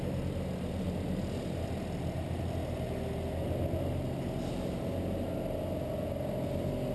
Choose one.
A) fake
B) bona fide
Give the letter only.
B